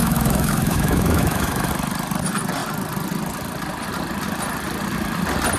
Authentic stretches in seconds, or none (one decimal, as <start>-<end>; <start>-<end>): 1.7-5.6